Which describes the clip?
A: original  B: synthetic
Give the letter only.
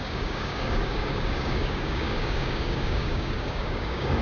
B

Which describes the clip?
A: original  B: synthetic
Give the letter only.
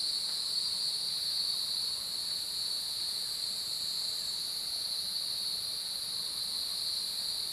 A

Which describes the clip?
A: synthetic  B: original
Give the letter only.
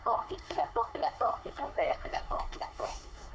A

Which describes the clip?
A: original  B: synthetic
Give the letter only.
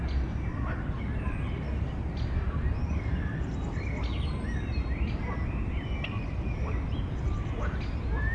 A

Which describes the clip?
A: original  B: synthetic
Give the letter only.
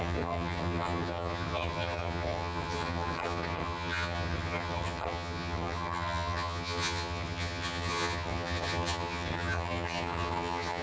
B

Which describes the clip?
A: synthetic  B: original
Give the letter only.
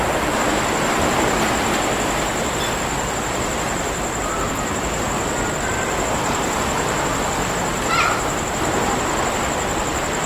B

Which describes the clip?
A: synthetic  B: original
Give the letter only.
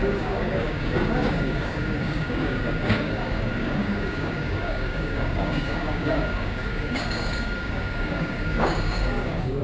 A